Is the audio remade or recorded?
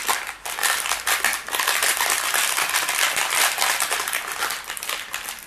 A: remade